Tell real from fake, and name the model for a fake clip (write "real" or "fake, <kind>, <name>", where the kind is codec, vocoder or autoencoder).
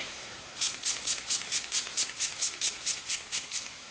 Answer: fake, codec, SNAC